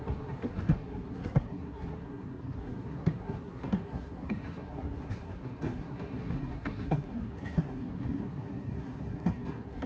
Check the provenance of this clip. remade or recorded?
remade